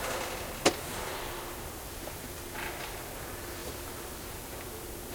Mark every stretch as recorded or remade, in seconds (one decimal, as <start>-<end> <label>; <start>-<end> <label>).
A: 0.0-5.1 recorded